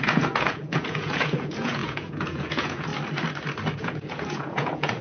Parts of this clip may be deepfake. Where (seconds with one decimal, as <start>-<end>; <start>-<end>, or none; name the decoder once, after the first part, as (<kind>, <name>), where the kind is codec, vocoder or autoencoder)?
0.0-2.9 (vocoder, Vocos); 3.8-5.0